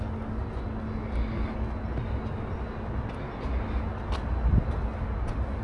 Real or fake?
real